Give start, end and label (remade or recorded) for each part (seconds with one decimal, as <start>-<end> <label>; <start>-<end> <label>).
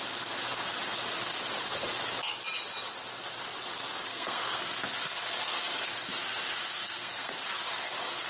0.0-4.1 recorded; 4.1-4.6 remade; 4.6-6.8 recorded; 6.8-7.3 remade; 7.3-8.3 recorded